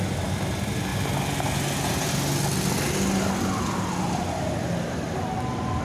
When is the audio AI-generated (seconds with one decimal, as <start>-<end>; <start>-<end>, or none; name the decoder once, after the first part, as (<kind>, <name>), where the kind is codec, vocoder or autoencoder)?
none